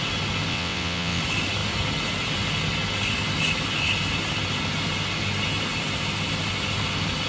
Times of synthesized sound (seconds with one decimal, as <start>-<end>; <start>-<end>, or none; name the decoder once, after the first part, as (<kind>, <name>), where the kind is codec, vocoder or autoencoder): 0.5-1.2 (vocoder, WaveNeXt)